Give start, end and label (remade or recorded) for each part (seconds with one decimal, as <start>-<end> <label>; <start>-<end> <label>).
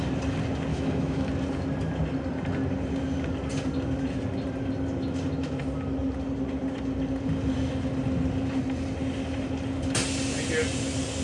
0.0-0.7 recorded; 0.7-1.3 remade; 1.3-11.2 recorded